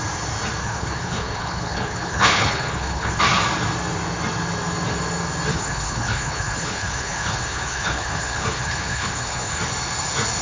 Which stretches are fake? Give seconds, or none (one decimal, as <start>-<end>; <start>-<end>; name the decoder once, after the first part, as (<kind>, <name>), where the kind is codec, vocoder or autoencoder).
0.6-3.2 (codec, HILCodec); 5.5-9.6